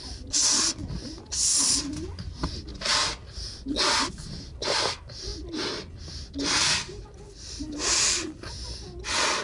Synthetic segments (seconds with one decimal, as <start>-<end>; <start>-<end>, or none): none